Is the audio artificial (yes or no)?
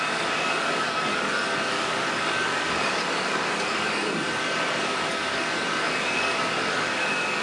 yes